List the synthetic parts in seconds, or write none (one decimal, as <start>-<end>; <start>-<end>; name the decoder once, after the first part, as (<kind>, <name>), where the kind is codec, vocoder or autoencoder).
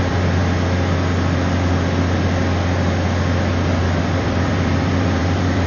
0.0-0.4 (vocoder, BigVGAN v2); 3.8-5.7